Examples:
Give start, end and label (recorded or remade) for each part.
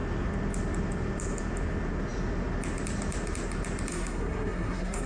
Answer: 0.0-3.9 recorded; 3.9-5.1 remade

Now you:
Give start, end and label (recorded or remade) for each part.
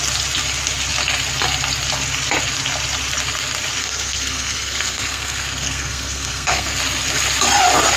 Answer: 0.0-3.8 recorded; 3.8-6.8 remade; 6.8-8.0 recorded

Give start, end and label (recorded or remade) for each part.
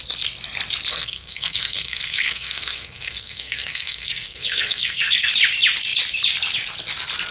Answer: 0.0-0.9 recorded; 0.9-5.3 remade; 5.3-7.3 recorded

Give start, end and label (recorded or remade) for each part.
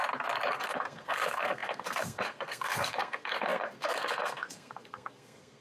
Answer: 0.0-0.5 recorded; 0.5-5.6 remade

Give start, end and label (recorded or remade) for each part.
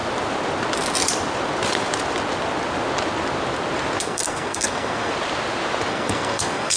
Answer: 0.0-4.0 recorded; 4.0-5.1 remade; 5.1-5.9 recorded; 5.9-6.8 remade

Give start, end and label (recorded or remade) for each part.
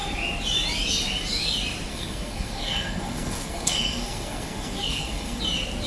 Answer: 0.0-1.9 recorded; 1.9-5.4 remade; 5.4-5.9 recorded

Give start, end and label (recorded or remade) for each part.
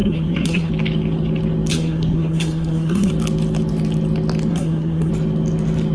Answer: 0.0-0.7 remade; 0.7-1.7 recorded; 1.7-3.1 remade; 3.1-4.5 recorded; 4.5-5.1 remade; 5.1-5.9 recorded